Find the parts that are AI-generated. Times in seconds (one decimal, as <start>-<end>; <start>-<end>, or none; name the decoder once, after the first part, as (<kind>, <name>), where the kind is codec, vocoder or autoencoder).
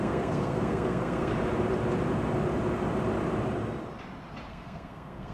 0.0-1.3 (codec, SNAC); 4.5-5.3